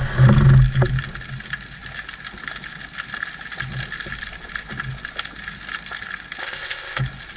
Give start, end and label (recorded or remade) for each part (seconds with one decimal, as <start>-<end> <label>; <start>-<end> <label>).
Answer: 0.0-6.4 recorded; 6.4-7.0 remade; 7.0-7.4 recorded